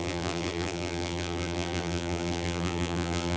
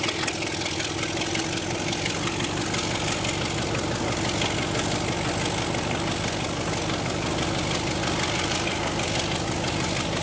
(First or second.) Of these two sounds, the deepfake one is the first